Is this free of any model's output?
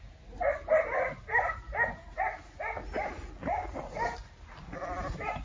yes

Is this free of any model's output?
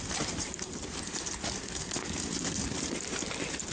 yes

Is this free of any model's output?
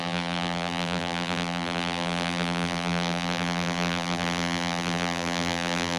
no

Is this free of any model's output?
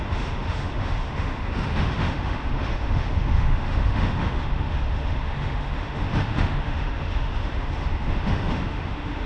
no